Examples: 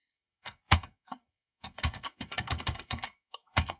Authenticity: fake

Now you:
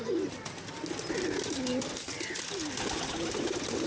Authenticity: real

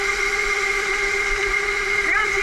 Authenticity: fake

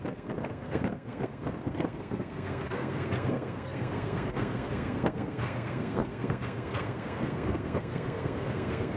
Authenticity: fake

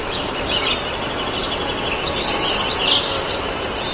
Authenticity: real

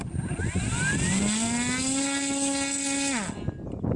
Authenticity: real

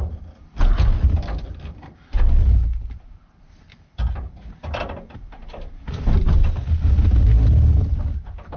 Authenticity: real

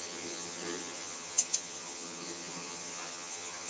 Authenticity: fake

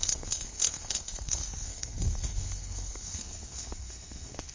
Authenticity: fake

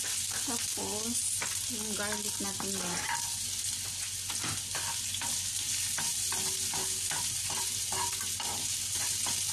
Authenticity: real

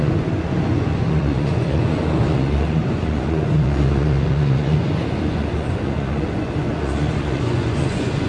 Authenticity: fake